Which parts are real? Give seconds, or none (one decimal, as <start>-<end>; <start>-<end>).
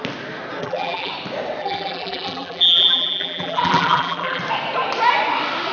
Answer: 0.0-0.6; 1.1-1.6; 4.4-5.7